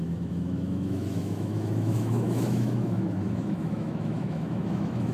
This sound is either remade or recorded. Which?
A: remade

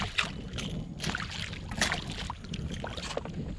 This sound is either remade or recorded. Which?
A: recorded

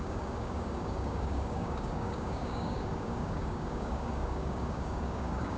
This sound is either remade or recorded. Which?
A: remade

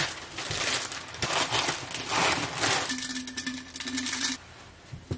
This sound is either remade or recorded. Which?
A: recorded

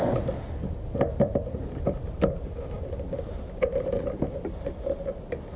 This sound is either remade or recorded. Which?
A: recorded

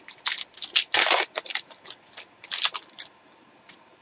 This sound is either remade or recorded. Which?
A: recorded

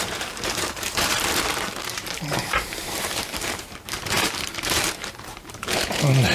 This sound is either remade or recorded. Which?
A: remade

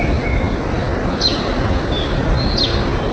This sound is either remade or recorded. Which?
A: recorded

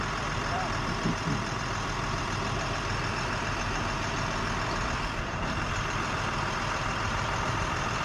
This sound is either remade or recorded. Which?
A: remade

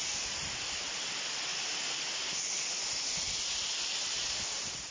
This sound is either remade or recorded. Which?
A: recorded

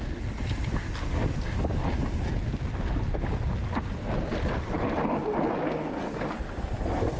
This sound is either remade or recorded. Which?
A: recorded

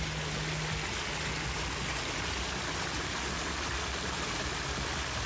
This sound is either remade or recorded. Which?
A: recorded